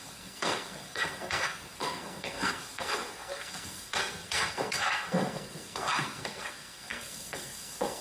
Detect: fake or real fake